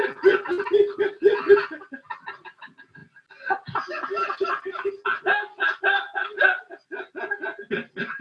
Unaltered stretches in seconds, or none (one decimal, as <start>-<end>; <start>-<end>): 0.0-8.2